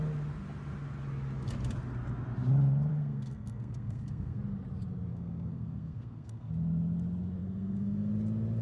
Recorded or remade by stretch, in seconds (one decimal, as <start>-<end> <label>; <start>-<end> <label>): 0.0-2.9 recorded; 2.9-4.4 remade; 4.4-5.1 recorded; 5.1-6.5 remade; 6.5-7.4 recorded; 7.4-8.1 remade; 8.1-8.6 recorded